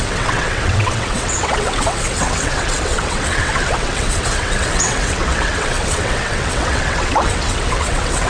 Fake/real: fake